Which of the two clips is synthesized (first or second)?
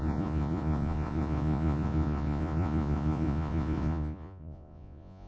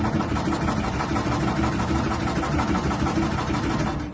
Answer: first